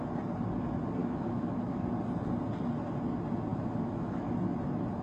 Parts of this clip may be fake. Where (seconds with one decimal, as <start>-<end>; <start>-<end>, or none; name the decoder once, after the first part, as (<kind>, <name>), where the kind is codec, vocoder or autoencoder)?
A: 1.0-1.8 (autoencoder, DAC-VAE); 3.5-4.3